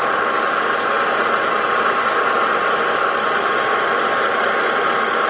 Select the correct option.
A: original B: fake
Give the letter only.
A